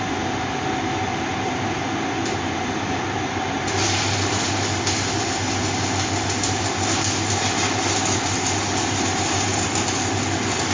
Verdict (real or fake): real